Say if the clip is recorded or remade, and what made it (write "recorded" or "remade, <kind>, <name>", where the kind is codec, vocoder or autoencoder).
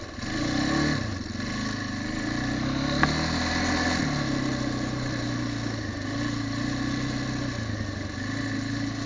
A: recorded